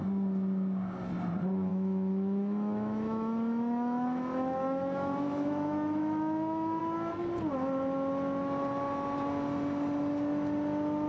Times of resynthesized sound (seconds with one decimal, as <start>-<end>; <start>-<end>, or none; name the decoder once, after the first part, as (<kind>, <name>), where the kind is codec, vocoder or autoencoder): 1.7-6.8 (autoencoder, DAC-VAE)